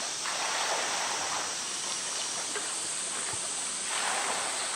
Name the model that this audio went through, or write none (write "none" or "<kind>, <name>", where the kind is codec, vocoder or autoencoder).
none